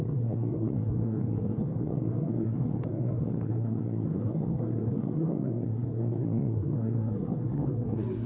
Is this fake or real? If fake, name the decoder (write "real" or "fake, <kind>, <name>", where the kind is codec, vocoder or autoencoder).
fake, codec, SNAC